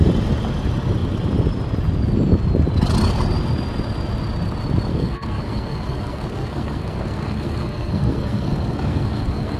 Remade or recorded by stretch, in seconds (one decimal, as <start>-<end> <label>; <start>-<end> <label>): 0.0-4.9 recorded; 4.9-9.6 remade